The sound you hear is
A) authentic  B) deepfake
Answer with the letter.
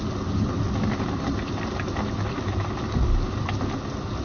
A